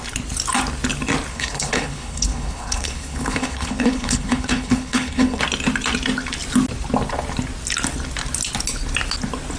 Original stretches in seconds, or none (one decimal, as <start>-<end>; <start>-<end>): 0.0-1.3; 5.4-9.6

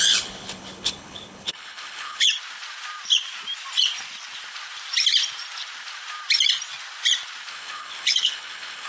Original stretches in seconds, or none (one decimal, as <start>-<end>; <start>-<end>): 2.3-7.5

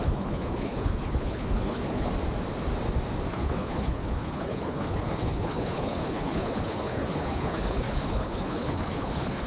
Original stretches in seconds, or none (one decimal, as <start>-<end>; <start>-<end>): 2.1-3.3

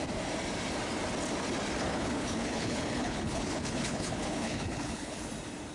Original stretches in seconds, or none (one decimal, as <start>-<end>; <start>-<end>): 0.0-1.9; 5.3-5.7

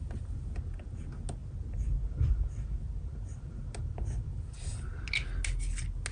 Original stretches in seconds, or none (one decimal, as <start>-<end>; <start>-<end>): 0.0-6.1

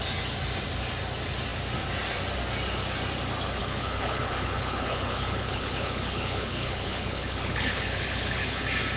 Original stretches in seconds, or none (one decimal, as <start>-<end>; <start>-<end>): 0.0-3.6; 8.6-9.0

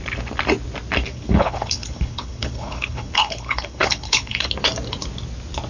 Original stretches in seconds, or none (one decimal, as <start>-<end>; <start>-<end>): 0.0-1.1; 4.5-5.7

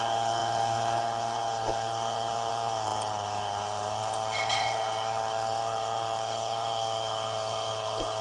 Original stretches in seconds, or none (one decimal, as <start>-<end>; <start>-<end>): none